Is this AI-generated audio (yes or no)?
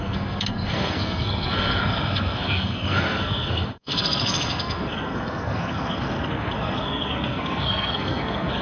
yes